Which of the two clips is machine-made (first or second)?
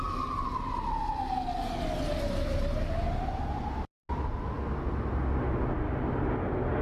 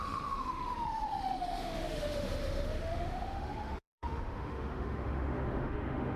second